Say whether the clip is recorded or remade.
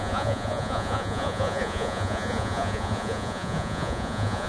remade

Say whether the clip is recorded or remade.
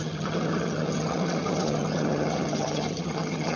remade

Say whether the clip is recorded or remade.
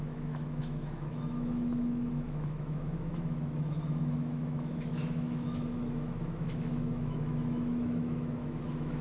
remade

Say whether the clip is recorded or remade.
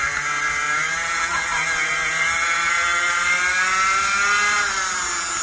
recorded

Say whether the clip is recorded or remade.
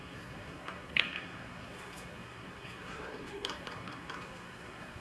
remade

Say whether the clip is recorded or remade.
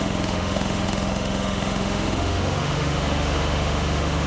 remade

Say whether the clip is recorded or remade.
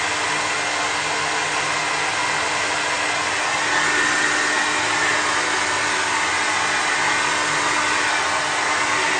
recorded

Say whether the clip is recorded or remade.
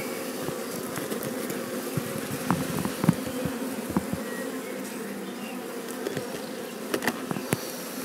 recorded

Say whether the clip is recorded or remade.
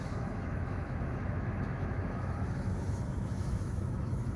remade